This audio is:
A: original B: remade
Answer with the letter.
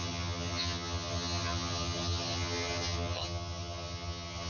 B